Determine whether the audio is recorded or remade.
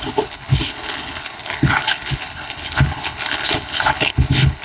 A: remade